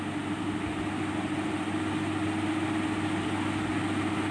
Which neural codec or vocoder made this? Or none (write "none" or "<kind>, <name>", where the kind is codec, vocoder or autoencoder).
none